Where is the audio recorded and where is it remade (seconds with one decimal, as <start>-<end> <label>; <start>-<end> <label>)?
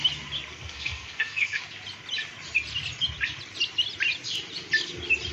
0.0-0.5 recorded; 0.5-1.6 remade; 1.6-5.3 recorded